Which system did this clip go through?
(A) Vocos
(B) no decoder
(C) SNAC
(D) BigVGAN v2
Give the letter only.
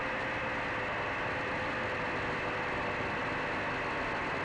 B